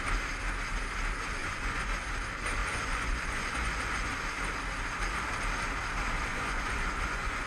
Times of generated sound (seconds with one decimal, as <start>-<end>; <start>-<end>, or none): 1.4-1.9; 2.6-4.1; 6.3-7.5